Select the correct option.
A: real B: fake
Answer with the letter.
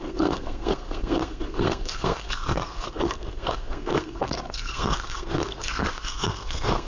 B